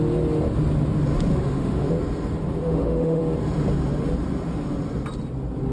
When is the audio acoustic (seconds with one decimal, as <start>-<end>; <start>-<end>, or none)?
0.0-1.3; 1.9-2.6; 3.2-5.7